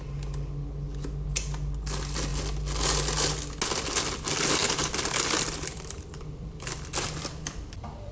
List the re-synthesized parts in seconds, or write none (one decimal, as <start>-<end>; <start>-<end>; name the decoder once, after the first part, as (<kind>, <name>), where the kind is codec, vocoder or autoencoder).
4.6-8.1 (vocoder, BigVGAN v2)